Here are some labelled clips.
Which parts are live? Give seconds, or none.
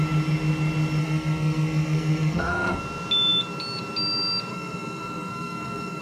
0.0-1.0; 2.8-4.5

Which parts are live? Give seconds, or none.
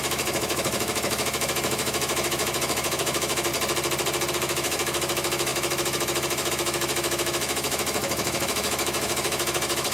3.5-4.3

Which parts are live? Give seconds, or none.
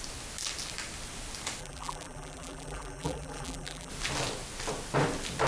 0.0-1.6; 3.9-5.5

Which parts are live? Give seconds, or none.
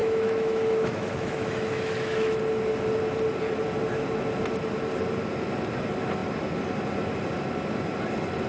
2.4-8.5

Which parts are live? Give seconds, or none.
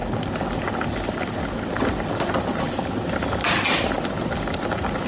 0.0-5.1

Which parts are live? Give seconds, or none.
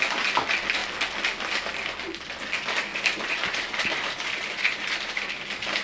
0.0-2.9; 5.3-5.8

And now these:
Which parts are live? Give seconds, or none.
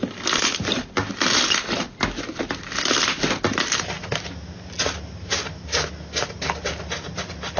0.0-7.6